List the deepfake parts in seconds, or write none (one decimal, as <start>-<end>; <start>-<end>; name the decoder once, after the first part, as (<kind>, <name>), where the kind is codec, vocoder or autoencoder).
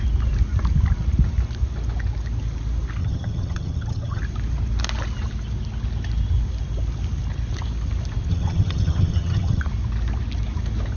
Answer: 3.0-4.2 (vocoder, HiFi-GAN); 8.3-9.6